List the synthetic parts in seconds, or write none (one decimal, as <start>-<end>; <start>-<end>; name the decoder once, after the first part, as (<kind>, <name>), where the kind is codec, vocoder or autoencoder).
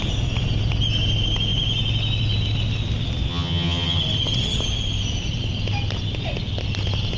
3.3-4.0 (vocoder, HiFi-GAN)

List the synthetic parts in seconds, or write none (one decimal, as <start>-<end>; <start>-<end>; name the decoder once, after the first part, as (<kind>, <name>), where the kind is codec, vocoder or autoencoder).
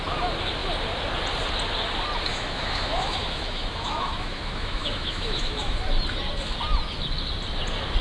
2.3-5.8 (autoencoder, DAC-VAE)